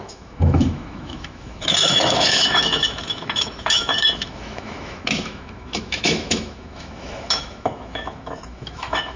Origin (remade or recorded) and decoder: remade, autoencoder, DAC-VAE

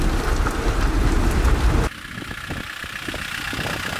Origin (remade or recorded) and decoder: recorded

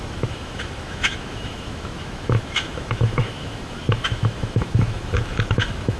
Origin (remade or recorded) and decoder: remade, autoencoder, DAC-VAE